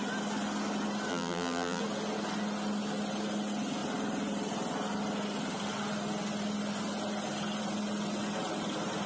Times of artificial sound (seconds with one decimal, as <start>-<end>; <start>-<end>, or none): 1.1-1.8